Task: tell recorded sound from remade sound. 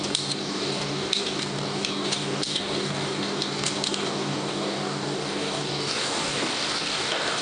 remade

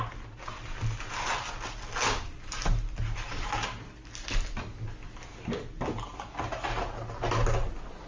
recorded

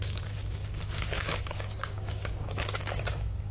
remade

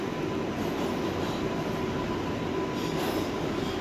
recorded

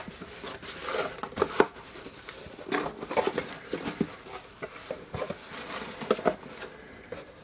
recorded